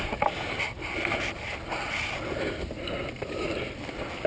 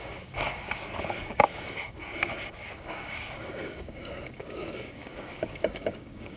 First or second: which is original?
first